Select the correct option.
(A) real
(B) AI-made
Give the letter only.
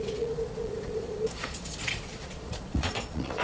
B